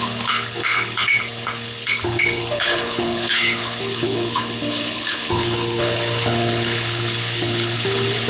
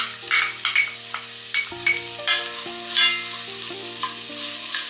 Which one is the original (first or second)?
second